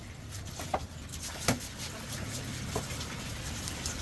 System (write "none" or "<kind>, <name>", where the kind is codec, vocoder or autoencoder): none